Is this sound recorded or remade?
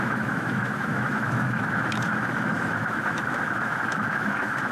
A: remade